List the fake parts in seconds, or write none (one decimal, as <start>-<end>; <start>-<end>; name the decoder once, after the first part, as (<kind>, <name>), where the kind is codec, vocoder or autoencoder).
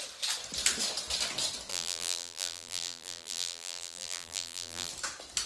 1.7-4.9 (vocoder, BigVGAN v2)